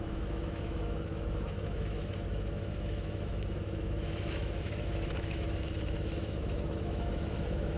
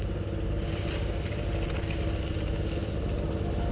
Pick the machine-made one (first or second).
first